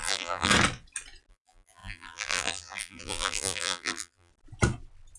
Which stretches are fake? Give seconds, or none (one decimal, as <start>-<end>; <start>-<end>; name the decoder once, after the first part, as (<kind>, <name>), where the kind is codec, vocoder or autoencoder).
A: 0.0-0.5 (vocoder, BigVGAN v2); 1.3-4.3